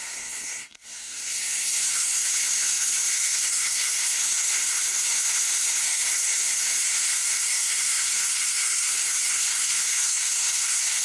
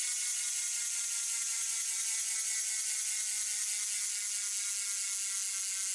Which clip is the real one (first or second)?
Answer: second